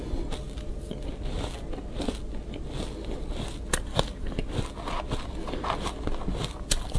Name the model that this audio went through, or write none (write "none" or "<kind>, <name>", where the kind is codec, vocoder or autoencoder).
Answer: none